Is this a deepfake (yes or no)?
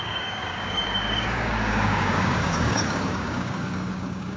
yes